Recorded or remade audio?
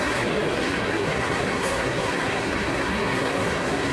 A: remade